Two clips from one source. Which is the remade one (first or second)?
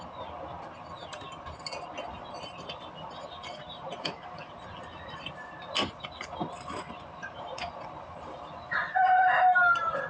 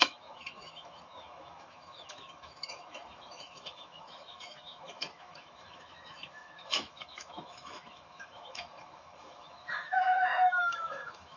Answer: second